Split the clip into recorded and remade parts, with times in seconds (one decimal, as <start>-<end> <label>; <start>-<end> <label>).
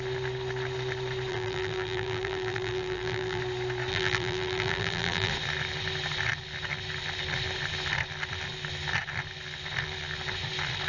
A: 0.0-1.3 recorded; 1.3-3.4 remade; 3.4-3.9 recorded; 3.9-5.3 remade; 5.3-10.9 recorded